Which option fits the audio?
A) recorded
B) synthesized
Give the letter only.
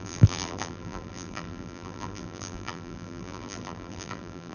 B